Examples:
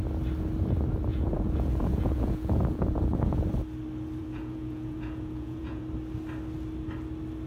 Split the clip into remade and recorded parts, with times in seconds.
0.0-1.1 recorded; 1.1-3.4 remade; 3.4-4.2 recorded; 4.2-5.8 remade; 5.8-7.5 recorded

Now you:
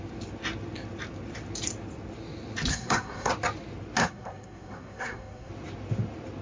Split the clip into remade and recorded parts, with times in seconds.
0.0-2.7 recorded; 2.7-3.3 remade; 3.3-4.0 recorded; 4.0-5.5 remade; 5.5-6.4 recorded